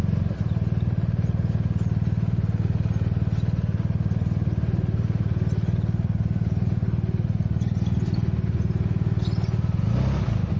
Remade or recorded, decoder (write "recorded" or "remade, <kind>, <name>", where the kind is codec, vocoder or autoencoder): recorded